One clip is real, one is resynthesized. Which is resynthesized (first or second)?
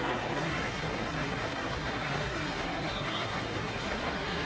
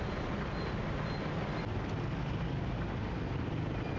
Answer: first